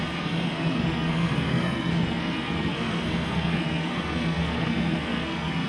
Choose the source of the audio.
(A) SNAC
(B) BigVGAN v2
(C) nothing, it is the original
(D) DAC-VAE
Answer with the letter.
A